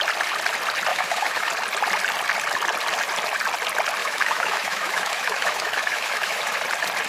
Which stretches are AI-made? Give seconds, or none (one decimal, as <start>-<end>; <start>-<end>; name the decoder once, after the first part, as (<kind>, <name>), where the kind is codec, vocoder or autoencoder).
0.9-1.5 (autoencoder, DAC-VAE); 4.0-6.6